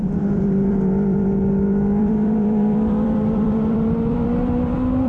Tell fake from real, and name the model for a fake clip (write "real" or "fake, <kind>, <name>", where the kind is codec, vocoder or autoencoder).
fake, vocoder, BigVGAN v2